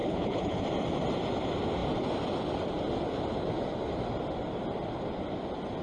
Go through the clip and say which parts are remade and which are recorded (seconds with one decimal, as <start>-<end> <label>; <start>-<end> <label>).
0.0-0.6 remade; 0.6-5.8 recorded